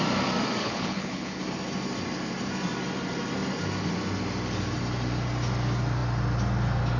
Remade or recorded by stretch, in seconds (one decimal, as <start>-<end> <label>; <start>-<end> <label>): 0.0-0.6 recorded; 0.6-1.4 remade; 1.4-7.0 recorded